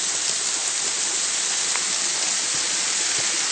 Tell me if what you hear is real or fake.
real